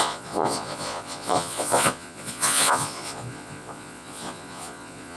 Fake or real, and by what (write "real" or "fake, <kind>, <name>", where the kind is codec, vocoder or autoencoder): fake, vocoder, Vocos